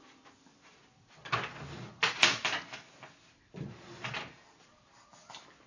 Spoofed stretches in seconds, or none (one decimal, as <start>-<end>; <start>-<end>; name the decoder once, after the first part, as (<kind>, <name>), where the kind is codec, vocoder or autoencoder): none